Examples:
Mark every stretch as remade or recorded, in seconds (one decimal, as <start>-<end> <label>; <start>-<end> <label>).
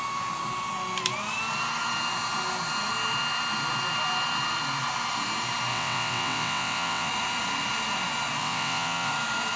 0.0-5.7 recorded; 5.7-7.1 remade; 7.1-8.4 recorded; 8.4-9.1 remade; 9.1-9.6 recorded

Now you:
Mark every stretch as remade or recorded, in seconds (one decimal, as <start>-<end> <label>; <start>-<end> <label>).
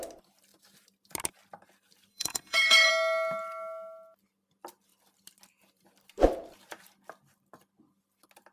0.0-2.1 recorded; 2.1-2.9 remade; 2.9-8.5 recorded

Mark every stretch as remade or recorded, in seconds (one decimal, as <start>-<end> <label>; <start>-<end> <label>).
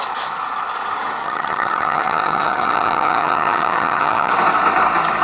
0.0-1.2 recorded; 1.2-4.3 remade; 4.3-5.2 recorded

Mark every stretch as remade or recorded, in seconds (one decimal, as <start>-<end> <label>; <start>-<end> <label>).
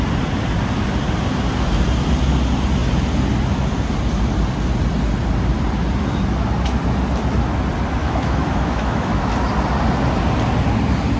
0.0-8.0 recorded; 8.0-9.2 remade; 9.2-11.2 recorded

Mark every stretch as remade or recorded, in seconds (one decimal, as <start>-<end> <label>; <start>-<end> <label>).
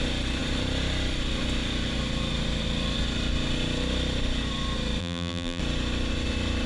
0.0-5.0 recorded; 5.0-5.6 remade; 5.6-6.7 recorded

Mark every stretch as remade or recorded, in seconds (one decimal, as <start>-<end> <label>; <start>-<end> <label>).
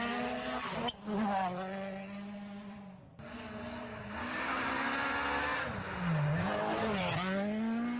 0.0-4.2 recorded; 4.2-4.7 remade; 4.7-8.0 recorded